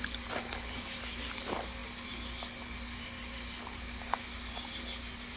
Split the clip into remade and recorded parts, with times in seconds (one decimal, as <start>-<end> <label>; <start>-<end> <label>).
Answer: 0.0-5.4 recorded

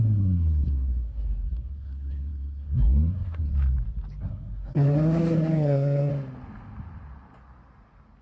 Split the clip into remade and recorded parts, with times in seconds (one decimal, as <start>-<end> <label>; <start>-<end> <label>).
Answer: 0.0-3.5 remade; 3.5-4.2 recorded; 4.2-6.1 remade; 6.1-8.2 recorded

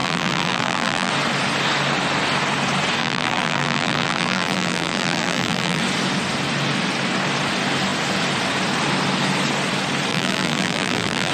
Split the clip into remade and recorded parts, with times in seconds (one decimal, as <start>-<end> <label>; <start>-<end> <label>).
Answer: 0.0-1.1 remade; 1.1-3.0 recorded; 3.0-5.8 remade; 5.8-10.1 recorded; 10.1-11.3 remade

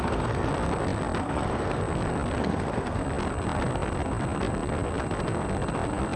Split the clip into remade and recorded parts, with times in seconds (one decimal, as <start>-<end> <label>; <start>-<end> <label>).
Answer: 0.0-0.5 remade; 0.5-1.2 recorded; 1.2-1.8 remade; 1.8-2.4 recorded; 2.4-3.0 remade; 3.0-6.2 recorded

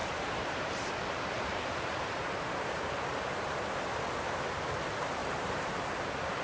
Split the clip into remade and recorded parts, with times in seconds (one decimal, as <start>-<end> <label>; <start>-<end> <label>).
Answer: 0.0-2.9 remade; 2.9-5.2 recorded; 5.2-5.9 remade; 5.9-6.4 recorded

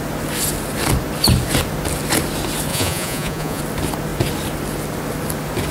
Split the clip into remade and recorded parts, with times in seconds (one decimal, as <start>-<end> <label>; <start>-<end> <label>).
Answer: 0.0-2.7 recorded; 2.7-3.6 remade; 3.6-5.7 recorded

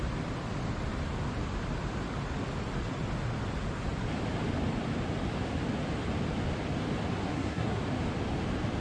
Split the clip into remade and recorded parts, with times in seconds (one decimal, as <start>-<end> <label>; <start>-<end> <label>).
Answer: 0.0-7.2 recorded; 7.2-7.8 remade; 7.8-8.8 recorded

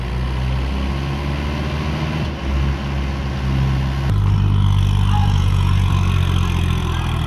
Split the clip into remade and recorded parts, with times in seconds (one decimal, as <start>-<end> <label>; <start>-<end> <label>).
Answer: 0.0-5.2 recorded; 5.2-5.9 remade; 5.9-7.3 recorded